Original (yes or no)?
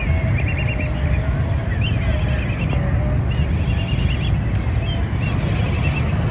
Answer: yes